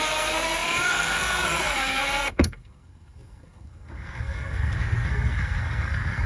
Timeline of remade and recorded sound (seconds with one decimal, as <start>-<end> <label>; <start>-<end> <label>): 0.0-6.3 remade